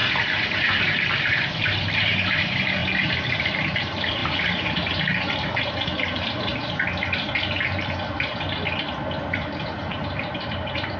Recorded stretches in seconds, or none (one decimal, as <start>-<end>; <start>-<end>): 2.8-3.4; 6.5-9.3